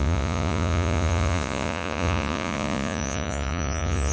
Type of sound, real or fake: fake